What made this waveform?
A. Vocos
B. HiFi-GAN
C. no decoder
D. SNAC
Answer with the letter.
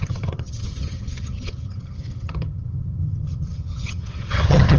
B